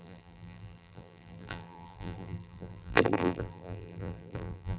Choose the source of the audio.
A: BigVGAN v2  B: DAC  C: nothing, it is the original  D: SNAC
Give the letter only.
A